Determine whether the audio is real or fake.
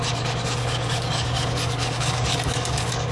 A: fake